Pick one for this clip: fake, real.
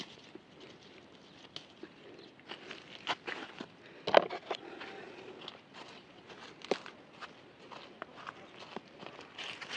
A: real